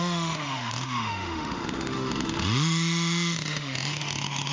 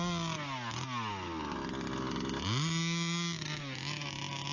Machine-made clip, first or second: first